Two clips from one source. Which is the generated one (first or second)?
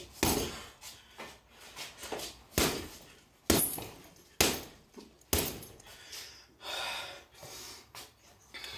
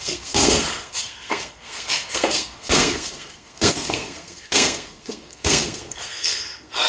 second